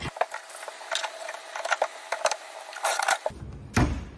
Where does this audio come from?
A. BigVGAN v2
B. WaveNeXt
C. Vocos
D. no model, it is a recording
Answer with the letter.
D